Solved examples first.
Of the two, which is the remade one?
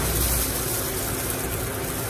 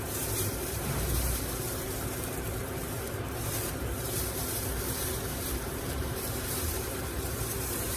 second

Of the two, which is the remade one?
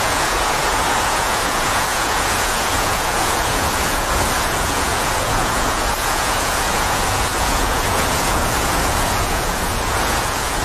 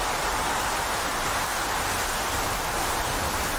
first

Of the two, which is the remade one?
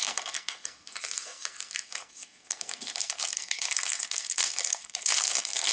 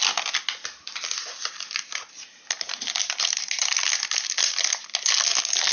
first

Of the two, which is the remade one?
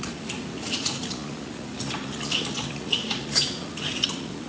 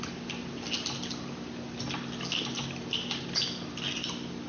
first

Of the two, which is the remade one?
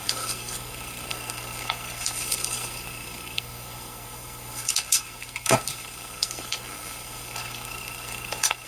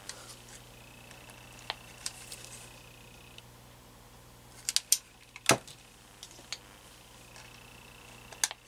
first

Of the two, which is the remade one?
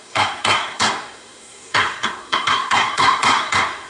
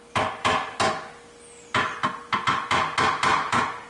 first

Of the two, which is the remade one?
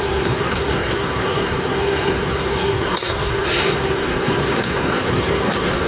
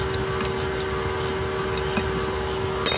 first